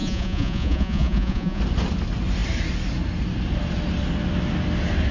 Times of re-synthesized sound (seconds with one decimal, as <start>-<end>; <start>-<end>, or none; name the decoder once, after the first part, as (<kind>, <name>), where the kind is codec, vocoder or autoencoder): 0.0-1.6 (vocoder, Vocos)